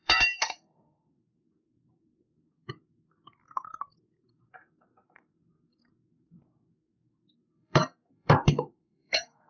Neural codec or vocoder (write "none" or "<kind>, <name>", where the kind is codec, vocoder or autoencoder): codec, SNAC